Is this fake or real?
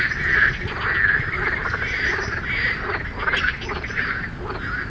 real